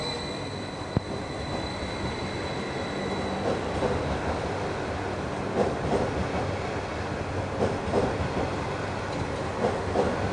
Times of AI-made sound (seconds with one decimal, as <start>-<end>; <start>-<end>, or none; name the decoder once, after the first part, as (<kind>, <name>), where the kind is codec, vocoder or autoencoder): none